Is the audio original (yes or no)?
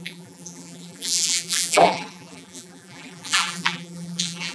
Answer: no